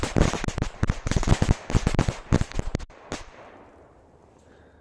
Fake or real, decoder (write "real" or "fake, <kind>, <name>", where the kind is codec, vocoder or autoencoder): real